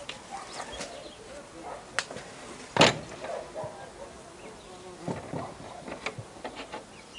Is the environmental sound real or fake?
real